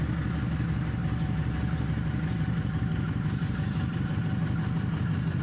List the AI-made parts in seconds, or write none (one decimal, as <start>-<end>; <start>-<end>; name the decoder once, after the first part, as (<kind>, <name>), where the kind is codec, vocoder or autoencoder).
1.0-4.2 (vocoder, BigVGAN v2)